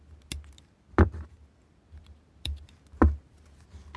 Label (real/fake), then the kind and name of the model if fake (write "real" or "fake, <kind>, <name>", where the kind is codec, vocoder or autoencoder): real